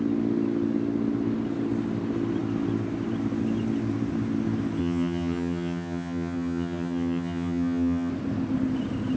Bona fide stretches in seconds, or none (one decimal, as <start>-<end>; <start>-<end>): 0.0-4.8; 8.1-9.2